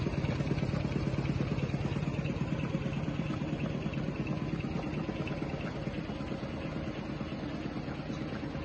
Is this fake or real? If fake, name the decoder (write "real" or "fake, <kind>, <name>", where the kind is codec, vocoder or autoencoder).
real